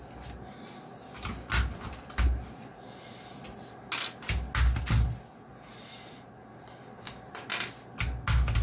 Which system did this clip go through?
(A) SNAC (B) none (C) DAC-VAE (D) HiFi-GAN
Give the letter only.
B